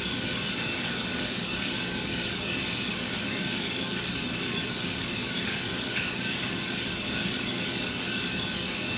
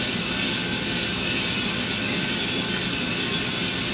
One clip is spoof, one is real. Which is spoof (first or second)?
first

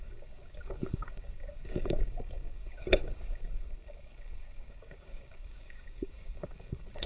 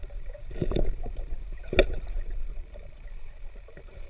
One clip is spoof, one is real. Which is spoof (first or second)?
first